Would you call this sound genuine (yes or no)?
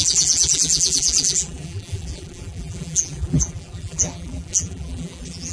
no